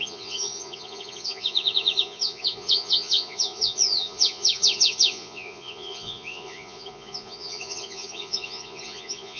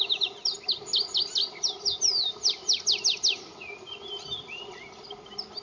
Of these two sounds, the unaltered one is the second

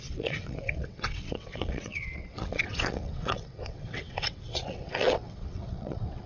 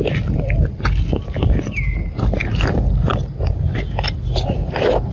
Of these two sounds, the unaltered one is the second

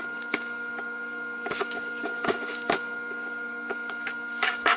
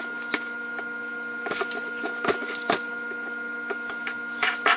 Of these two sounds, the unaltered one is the second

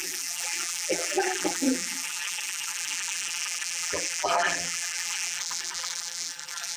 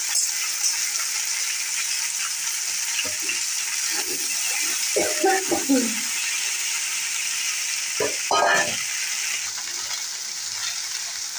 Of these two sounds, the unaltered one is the second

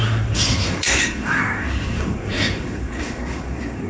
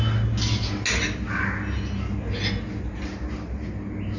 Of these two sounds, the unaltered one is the second